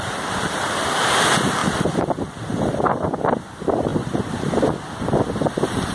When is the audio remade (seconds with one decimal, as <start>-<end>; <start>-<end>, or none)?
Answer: 1.6-2.7